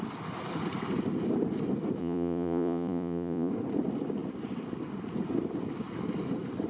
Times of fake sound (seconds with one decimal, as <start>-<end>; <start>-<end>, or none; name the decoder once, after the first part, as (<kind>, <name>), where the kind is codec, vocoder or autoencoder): 2.0-3.5 (vocoder, Vocos)